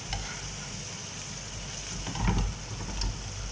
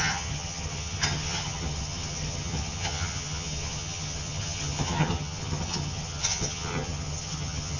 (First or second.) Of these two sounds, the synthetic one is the second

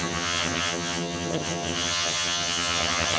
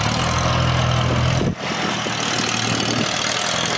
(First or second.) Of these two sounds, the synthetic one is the first